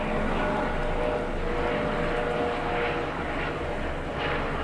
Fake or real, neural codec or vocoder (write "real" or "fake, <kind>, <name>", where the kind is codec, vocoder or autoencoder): real